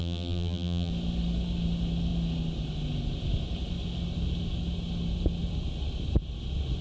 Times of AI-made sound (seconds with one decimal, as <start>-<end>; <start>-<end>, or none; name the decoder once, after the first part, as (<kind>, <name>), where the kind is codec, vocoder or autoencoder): 0.0-0.9 (vocoder, BigVGAN v2)